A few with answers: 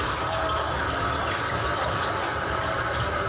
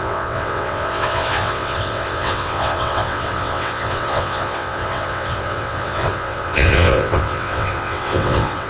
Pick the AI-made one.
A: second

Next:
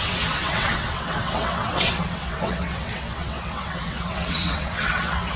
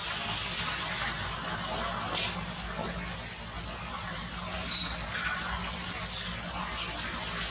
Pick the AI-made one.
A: first